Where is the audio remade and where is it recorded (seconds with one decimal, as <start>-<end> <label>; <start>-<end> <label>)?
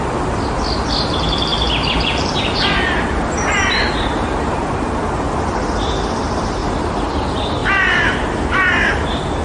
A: 0.0-1.5 recorded; 1.5-4.6 remade; 4.6-6.6 recorded; 6.6-7.1 remade; 7.1-9.4 recorded